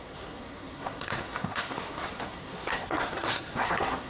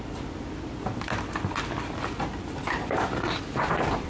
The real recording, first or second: second